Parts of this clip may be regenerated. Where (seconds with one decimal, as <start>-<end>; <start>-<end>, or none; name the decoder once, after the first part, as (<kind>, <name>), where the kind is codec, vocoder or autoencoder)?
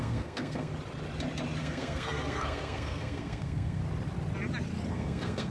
0.0-0.7 (codec, SNAC); 1.6-3.8; 4.9-5.5